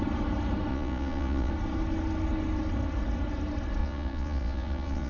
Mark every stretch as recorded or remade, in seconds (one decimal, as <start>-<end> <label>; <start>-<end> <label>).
0.0-0.7 recorded; 0.7-1.5 remade; 1.5-3.8 recorded; 3.8-5.1 remade